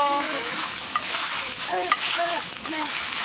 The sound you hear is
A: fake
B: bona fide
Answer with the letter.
A